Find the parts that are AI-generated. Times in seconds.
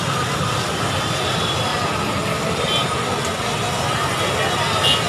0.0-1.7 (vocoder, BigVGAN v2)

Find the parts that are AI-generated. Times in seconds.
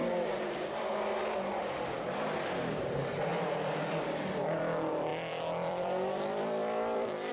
0.0-0.9 (vocoder, BigVGAN v2); 3.3-4.6; 5.1-7.3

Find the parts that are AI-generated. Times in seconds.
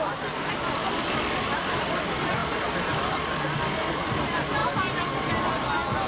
none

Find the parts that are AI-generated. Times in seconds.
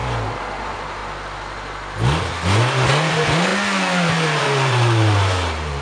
0.6-1.0 (vocoder, BigVGAN v2); 3.1-5.8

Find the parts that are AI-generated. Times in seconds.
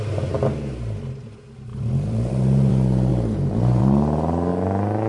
1.7-2.7 (vocoder, BigVGAN v2); 3.1-3.8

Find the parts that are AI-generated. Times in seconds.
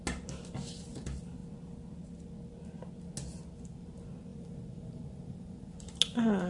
4.3-5.9 (vocoder, BigVGAN v2)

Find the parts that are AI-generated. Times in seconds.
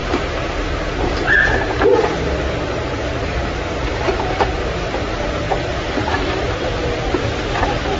1.7-8.0 (vocoder, BigVGAN v2)